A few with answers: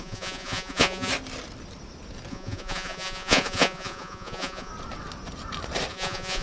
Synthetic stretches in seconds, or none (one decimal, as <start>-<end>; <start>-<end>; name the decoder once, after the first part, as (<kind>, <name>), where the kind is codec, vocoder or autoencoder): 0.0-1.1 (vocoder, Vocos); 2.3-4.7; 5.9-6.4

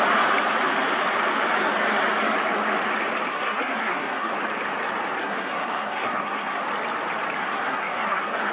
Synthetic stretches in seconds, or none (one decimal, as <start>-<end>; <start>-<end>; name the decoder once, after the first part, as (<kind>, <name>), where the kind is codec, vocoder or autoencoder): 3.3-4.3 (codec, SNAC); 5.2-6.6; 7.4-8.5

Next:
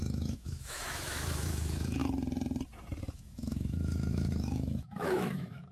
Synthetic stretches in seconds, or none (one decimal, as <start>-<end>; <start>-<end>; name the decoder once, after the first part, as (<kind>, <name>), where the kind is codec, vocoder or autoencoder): 0.0-2.0 (autoencoder, DAC-VAE); 3.1-5.7

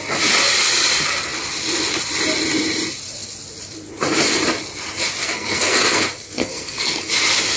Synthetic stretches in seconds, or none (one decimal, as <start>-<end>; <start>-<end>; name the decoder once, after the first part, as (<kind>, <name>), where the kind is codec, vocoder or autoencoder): 5.2-7.1 (codec, SNAC)

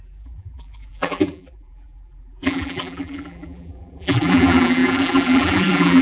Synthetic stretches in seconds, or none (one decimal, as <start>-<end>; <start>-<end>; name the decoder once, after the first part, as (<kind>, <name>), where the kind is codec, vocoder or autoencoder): 0.0-6.0 (vocoder, BigVGAN v2)